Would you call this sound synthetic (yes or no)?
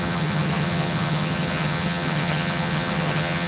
yes